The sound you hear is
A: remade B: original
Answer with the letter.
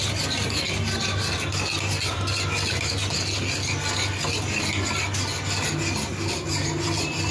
B